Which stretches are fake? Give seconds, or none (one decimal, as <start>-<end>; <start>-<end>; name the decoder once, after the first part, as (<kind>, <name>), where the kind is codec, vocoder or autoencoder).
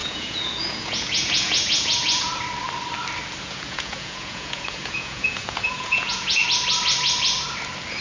0.0-2.3 (vocoder, Vocos); 3.4-6.4